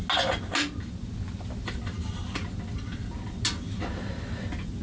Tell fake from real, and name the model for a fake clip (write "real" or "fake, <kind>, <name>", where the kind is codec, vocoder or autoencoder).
real